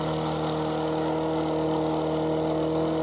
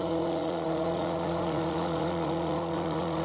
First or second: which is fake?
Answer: second